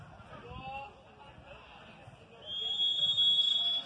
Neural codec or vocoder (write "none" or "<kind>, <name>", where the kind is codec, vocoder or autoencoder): none